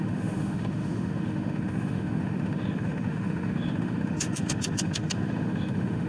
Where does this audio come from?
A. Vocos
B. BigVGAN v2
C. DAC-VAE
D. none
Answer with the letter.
C